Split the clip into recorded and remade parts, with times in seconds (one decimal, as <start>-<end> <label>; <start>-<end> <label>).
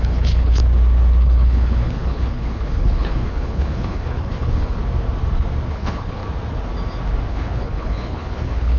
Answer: 0.0-0.6 remade; 0.6-1.2 recorded; 1.2-4.8 remade; 4.8-5.7 recorded; 5.7-6.2 remade; 6.2-7.3 recorded; 7.3-8.8 remade